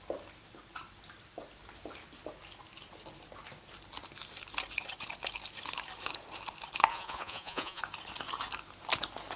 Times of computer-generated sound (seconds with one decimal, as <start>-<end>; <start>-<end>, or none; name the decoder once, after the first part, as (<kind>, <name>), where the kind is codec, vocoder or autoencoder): 6.9-7.8 (vocoder, Vocos)